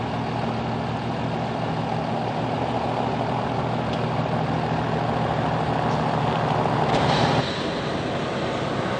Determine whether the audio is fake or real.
real